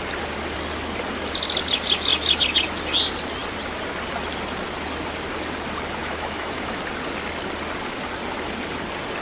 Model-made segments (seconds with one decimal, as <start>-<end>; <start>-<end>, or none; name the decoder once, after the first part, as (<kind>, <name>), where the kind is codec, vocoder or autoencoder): 6.0-6.8 (autoencoder, DAC-VAE)